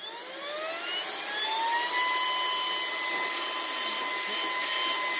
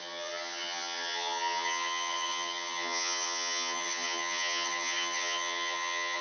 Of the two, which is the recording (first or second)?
first